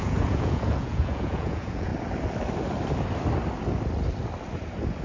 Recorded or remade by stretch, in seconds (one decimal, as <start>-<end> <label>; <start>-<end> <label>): 0.0-1.9 remade; 1.9-5.0 recorded